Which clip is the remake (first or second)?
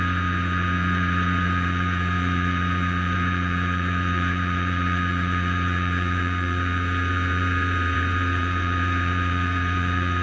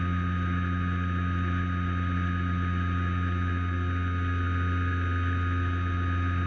first